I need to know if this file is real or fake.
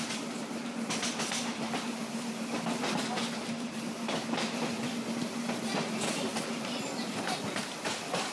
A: fake